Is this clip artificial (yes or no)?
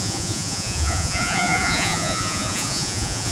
yes